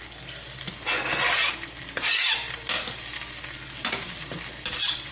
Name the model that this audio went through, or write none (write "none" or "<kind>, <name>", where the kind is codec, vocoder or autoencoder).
none